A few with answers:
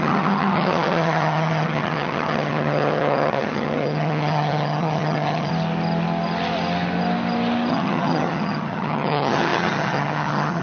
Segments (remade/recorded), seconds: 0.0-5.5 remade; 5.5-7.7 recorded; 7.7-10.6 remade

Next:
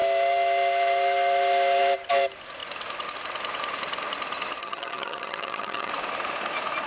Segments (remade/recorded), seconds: 0.0-4.6 recorded; 4.6-5.9 remade; 5.9-6.9 recorded

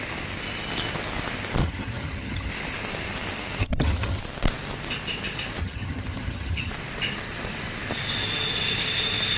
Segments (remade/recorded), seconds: 0.0-1.6 recorded; 1.6-2.5 remade; 2.5-3.6 recorded; 3.6-4.2 remade; 4.2-5.6 recorded; 5.6-6.7 remade; 6.7-9.4 recorded

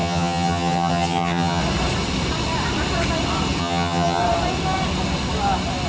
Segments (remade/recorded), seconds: 0.0-1.6 remade; 1.6-3.6 recorded; 3.6-4.2 remade; 4.2-5.9 recorded

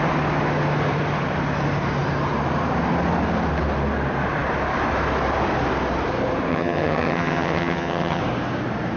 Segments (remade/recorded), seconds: 0.0-6.5 recorded; 6.5-8.2 remade; 8.2-9.0 recorded